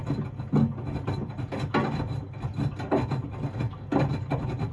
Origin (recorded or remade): recorded